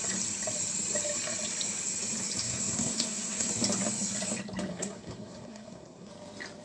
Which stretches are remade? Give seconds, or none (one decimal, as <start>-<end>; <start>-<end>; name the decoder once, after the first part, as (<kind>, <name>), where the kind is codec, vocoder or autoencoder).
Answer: 2.4-3.5 (codec, SNAC); 4.7-6.1